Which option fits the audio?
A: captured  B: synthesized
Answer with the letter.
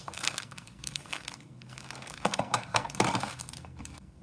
B